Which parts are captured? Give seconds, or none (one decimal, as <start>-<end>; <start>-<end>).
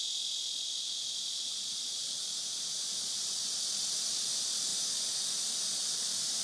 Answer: 0.0-6.4